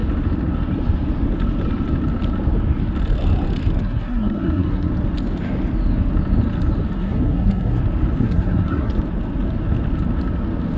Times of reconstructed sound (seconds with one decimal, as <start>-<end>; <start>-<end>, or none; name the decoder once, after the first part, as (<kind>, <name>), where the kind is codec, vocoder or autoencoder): 3.8-4.9 (codec, SNAC); 7.0-7.8; 8.2-8.9